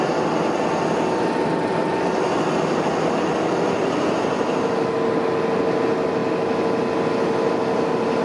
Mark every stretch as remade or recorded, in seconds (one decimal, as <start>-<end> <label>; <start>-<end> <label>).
0.0-8.2 recorded